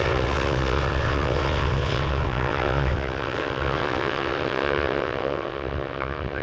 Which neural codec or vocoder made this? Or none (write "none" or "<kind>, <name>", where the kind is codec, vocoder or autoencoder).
vocoder, WaveNeXt